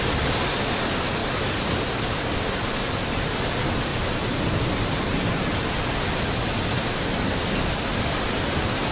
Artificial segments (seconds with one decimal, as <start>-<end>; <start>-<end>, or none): none